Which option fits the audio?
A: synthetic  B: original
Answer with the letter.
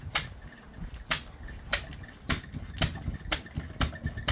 B